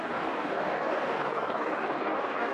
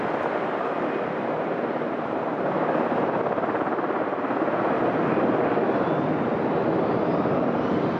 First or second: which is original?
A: second